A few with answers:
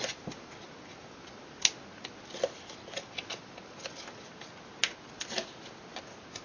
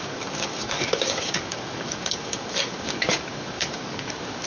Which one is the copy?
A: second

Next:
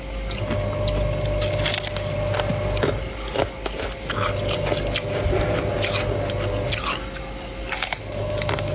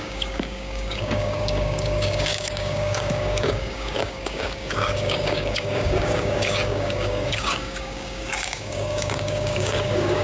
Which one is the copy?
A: second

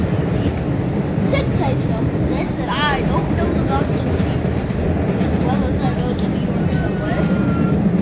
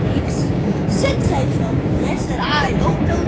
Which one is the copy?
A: second